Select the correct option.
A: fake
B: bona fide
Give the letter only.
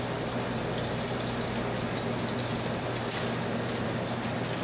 B